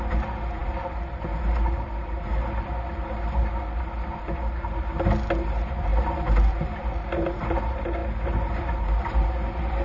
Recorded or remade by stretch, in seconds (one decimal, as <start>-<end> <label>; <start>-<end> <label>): 0.0-9.8 recorded